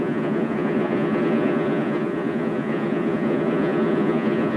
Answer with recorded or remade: remade